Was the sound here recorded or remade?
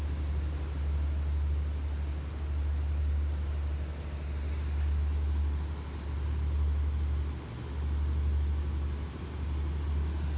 recorded